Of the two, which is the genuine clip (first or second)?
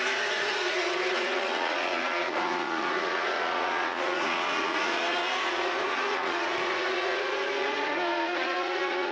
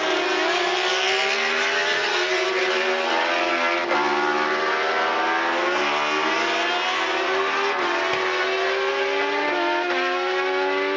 second